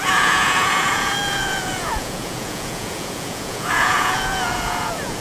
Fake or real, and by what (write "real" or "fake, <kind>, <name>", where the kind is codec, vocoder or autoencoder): fake, vocoder, Vocos